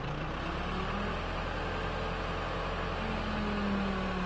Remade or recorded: recorded